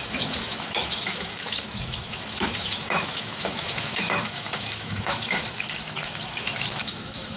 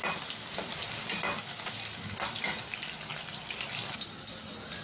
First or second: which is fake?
first